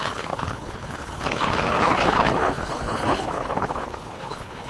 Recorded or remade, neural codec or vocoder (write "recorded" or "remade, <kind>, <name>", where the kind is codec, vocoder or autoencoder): remade, codec, HILCodec